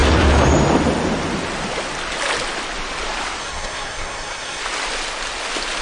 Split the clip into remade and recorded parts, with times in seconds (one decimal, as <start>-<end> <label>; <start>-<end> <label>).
0.0-3.4 recorded; 3.4-4.6 remade; 4.6-5.8 recorded